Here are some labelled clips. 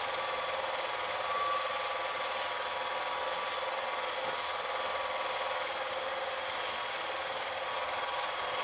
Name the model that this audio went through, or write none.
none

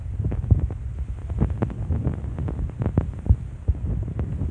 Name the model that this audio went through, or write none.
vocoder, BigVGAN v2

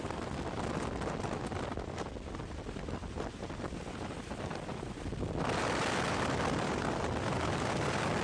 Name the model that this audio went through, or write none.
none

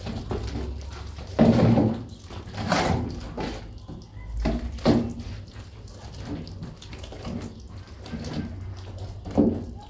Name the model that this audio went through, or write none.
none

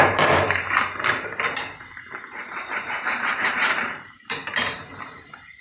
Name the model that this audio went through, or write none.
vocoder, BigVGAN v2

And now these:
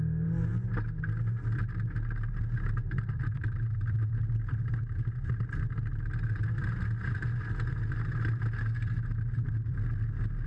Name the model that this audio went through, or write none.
none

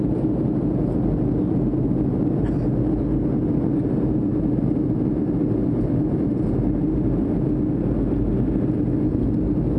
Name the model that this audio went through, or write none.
none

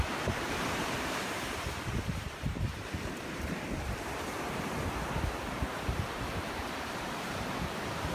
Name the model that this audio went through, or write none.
vocoder, BigVGAN v2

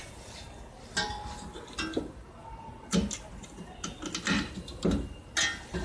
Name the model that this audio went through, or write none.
none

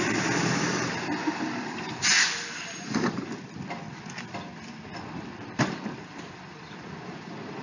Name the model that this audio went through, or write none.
vocoder, BigVGAN v2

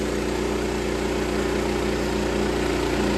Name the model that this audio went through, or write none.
none